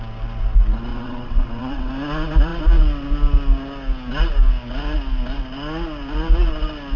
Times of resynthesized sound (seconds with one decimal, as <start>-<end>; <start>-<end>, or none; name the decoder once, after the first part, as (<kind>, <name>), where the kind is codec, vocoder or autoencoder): 0.9-1.9 (vocoder, WaveNeXt)